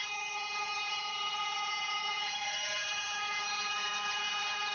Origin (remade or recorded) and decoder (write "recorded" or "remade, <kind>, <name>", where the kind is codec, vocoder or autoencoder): remade, vocoder, HiFi-GAN